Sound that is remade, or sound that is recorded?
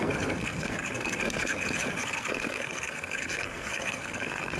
remade